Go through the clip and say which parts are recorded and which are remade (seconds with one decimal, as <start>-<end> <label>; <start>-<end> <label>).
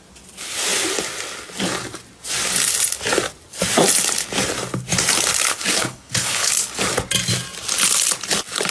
0.0-5.5 recorded; 5.5-6.5 remade; 6.5-8.7 recorded